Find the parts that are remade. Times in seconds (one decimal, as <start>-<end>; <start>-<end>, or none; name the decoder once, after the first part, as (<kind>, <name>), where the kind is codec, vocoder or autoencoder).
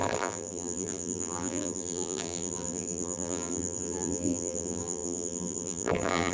0.0-6.3 (vocoder, BigVGAN v2)